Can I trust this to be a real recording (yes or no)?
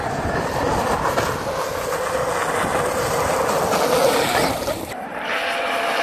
yes